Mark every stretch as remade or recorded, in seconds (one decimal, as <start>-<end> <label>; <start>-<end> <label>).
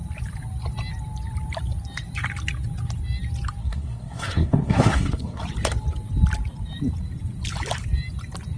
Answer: 0.0-3.6 recorded; 3.6-5.4 remade; 5.4-8.6 recorded